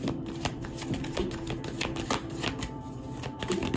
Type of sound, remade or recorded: recorded